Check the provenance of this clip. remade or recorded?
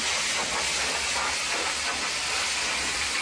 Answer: recorded